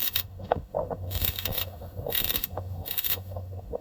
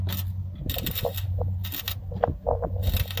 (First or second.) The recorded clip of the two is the second